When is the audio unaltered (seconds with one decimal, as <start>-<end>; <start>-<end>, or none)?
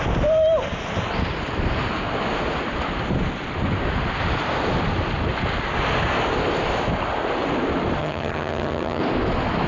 0.0-8.0; 9.0-9.7